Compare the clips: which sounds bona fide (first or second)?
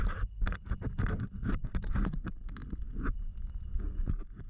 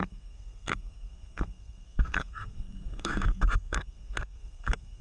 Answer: first